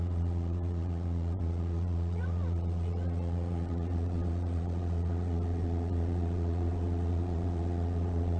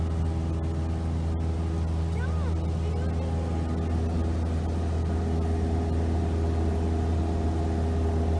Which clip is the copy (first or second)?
first